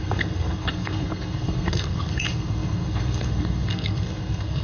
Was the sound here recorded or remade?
remade